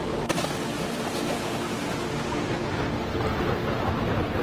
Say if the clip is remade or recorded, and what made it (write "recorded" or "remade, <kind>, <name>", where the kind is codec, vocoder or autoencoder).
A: recorded